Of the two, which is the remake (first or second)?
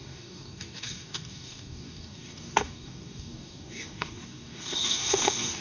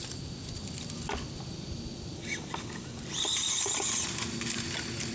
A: first